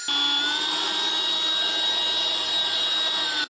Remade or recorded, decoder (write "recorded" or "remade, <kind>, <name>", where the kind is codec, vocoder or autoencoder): recorded